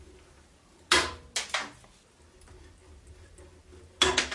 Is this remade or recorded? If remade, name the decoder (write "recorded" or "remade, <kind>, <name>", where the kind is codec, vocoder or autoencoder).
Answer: recorded